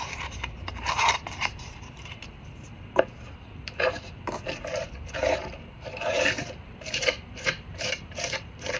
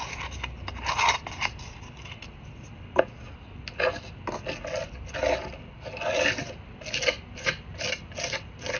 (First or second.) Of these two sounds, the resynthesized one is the first